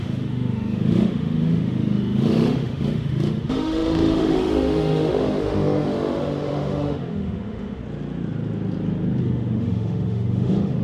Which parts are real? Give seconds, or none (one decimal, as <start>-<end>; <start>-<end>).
7.8-9.2